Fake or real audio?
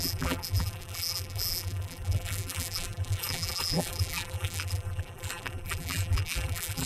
fake